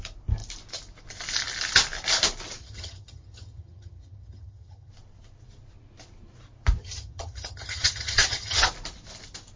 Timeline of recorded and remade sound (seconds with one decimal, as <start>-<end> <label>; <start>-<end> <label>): 0.0-2.6 recorded; 2.6-4.9 remade; 4.9-6.8 recorded; 6.8-8.7 remade; 8.7-9.6 recorded